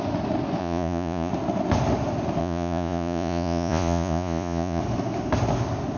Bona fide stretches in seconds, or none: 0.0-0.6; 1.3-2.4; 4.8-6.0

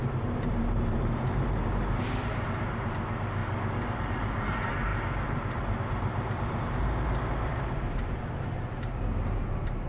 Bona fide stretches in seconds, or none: 3.4-4.0

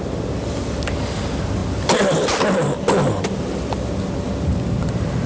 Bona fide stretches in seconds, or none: 0.0-5.3

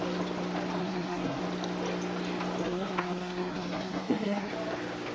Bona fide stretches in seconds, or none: 0.0-0.8; 1.4-2.6; 4.5-5.1

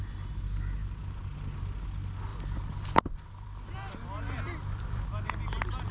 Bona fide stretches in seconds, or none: 0.0-2.3

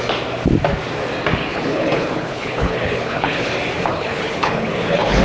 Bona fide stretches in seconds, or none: 0.0-1.5; 3.5-3.9

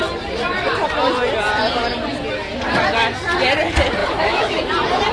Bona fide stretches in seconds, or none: 0.0-4.0; 4.6-5.1